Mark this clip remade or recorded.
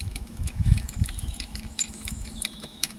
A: remade